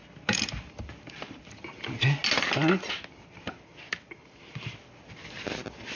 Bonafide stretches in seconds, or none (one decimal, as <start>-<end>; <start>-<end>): 0.0-0.7; 2.2-3.9